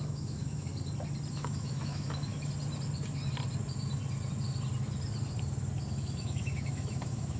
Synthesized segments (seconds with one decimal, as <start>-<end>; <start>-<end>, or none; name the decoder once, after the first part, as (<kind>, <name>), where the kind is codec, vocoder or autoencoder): 0.0-0.7 (autoencoder, DAC-VAE); 1.3-2.3; 5.9-7.4